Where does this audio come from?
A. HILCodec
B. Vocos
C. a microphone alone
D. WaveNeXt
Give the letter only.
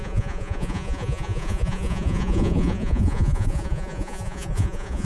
B